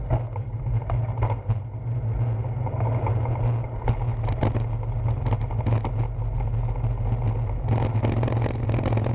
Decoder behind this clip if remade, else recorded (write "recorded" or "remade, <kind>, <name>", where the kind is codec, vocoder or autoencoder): recorded